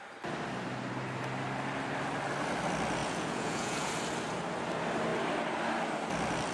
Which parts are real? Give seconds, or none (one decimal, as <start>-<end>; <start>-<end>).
0.0-3.0; 3.9-6.5